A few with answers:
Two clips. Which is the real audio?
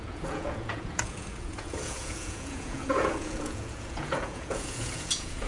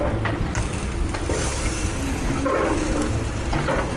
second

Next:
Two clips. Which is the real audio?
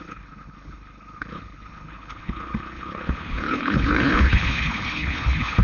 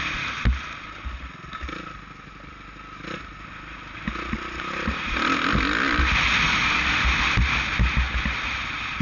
second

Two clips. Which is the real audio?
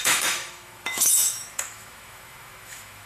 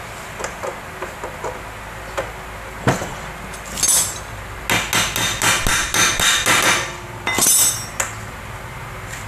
second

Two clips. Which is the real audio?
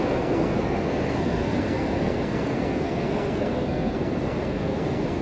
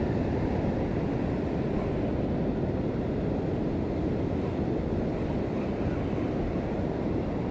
second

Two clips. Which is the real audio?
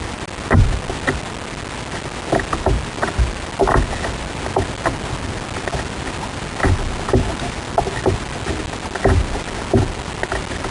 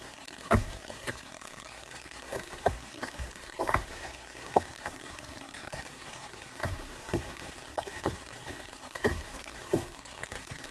first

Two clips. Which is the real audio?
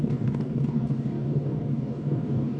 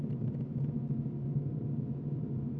second